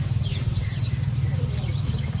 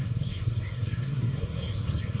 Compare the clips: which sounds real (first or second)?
first